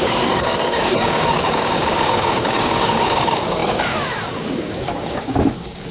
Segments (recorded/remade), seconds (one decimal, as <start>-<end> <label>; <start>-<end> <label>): 0.0-5.9 remade